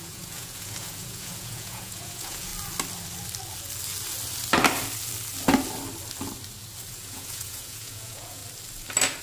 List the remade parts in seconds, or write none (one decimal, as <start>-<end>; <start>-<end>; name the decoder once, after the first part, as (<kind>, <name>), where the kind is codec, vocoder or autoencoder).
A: 0.0-2.5 (vocoder, Vocos); 6.9-8.4